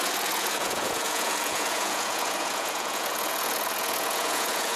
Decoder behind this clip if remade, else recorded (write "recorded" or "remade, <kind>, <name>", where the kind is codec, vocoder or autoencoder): remade, vocoder, Vocos